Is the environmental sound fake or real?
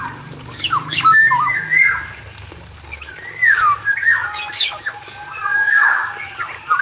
fake